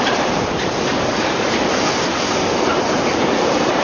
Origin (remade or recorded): remade